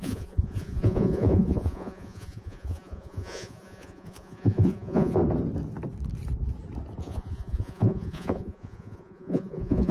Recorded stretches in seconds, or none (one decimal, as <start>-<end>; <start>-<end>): 5.2-7.0